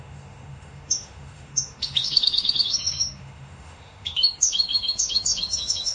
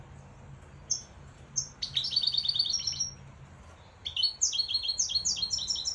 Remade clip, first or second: first